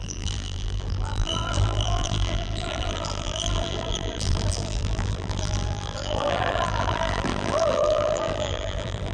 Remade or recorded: remade